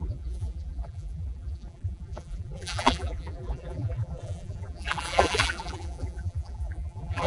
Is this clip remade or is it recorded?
remade